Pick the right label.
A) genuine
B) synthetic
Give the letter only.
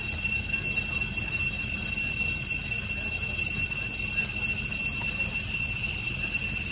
A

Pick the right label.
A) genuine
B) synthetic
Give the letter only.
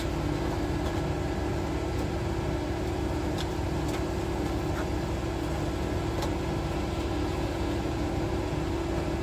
A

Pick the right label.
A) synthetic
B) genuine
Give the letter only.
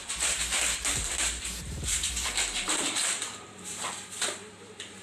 A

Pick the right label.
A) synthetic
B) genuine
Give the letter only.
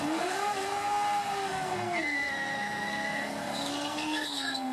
A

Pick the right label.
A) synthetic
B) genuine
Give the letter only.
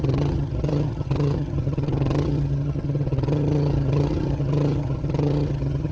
A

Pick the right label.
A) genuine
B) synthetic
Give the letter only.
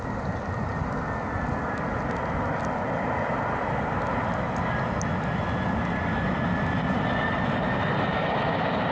A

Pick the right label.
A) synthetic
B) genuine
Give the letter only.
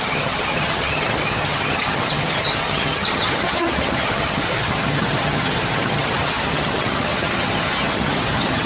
A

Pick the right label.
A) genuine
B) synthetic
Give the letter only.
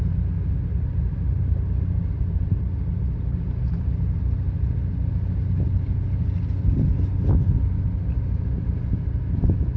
A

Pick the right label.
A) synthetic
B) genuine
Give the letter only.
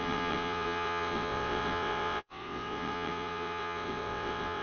A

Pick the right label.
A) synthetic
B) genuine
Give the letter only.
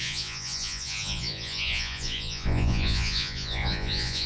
A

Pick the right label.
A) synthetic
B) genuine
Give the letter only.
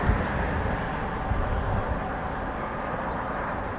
B